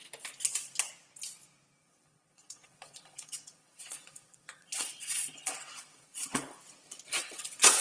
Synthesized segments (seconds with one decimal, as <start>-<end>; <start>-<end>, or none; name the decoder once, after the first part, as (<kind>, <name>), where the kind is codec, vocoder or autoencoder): 1.8-6.4 (vocoder, WaveNeXt); 7.2-7.8